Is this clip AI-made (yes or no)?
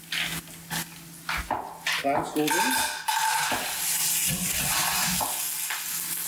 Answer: no